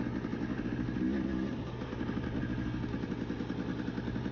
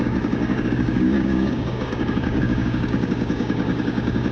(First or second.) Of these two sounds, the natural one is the first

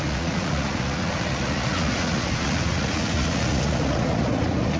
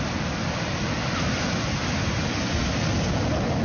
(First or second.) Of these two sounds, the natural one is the second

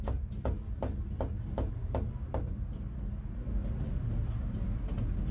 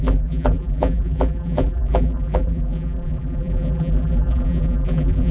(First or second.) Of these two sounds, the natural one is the first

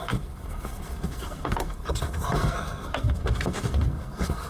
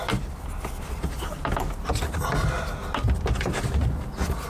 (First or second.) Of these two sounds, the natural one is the second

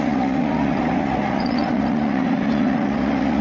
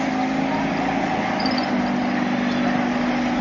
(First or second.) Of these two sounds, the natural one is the second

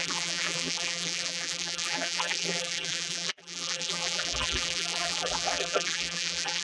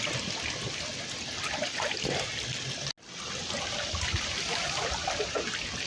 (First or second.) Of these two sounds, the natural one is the second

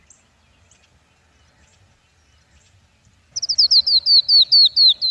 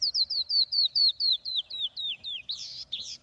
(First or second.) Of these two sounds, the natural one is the first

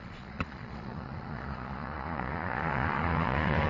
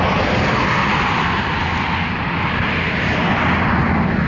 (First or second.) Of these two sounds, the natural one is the second